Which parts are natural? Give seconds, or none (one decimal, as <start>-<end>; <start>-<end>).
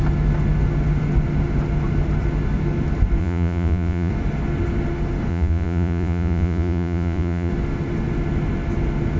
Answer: 0.0-3.2; 4.1-5.3; 7.5-9.2